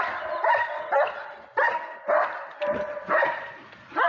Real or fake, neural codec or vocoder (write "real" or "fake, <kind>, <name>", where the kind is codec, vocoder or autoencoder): real